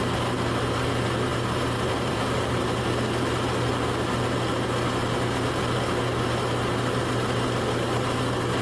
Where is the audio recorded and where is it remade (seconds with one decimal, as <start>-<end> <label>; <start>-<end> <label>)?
0.0-1.3 recorded; 1.3-2.2 remade; 2.2-5.0 recorded; 5.0-5.6 remade; 5.6-8.6 recorded